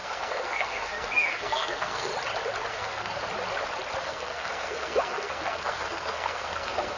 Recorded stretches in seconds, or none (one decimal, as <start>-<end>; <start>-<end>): 2.1-2.7; 3.2-4.0